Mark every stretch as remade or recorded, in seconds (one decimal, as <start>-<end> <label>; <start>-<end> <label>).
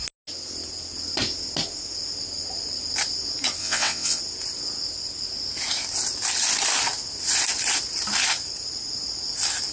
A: 0.0-3.6 recorded; 3.6-4.2 remade; 4.2-9.7 recorded